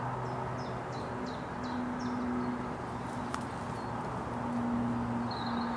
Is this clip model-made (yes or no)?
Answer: no